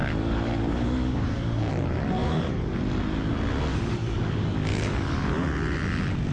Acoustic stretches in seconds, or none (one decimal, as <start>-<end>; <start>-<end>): 1.7-2.2; 2.8-3.7; 4.3-4.7; 5.3-6.3